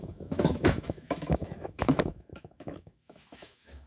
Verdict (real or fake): fake